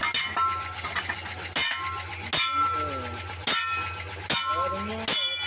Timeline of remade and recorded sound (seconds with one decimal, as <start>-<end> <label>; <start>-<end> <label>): 0.0-5.5 recorded